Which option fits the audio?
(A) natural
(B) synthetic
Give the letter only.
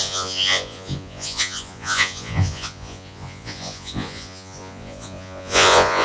B